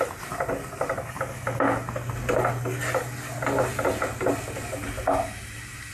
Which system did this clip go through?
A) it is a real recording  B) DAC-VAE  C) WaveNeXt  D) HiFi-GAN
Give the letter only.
A